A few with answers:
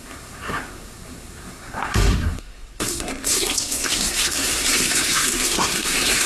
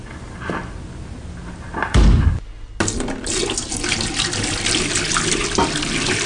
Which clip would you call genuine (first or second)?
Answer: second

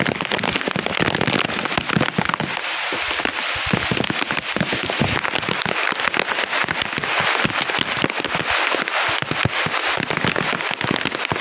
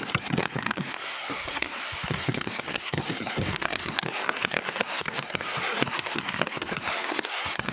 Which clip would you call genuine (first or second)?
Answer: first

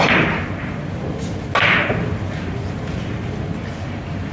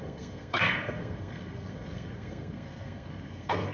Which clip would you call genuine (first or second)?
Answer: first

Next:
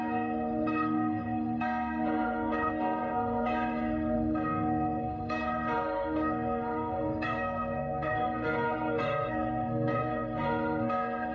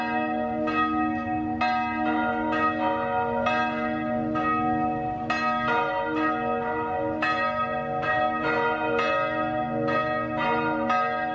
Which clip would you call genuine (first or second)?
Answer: second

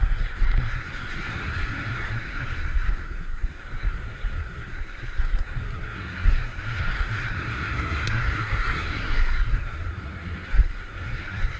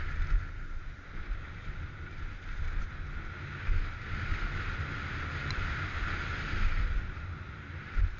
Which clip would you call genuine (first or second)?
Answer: second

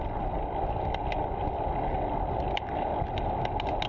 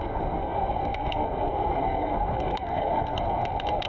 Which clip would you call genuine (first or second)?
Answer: first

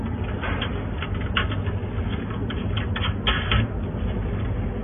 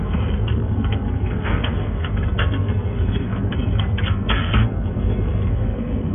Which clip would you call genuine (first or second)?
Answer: first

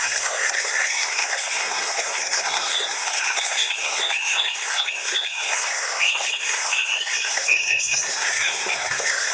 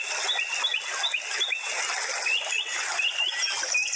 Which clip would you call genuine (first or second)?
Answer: second